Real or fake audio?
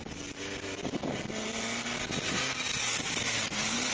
real